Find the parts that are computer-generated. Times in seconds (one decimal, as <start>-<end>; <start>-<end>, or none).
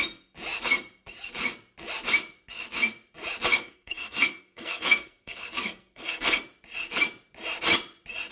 3.5-6.4